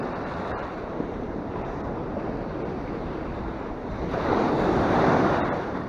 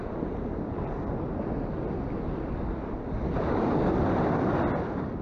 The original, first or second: second